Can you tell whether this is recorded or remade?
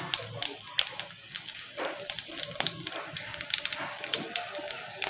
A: recorded